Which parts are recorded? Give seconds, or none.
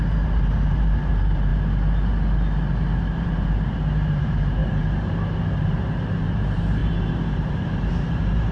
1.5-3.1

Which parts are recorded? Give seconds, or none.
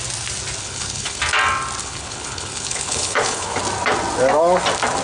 0.0-0.6; 1.2-1.8; 3.6-5.0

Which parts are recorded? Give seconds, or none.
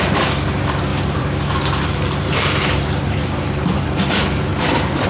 0.0-0.9; 4.0-4.5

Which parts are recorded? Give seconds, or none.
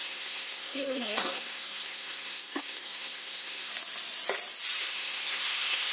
3.7-4.8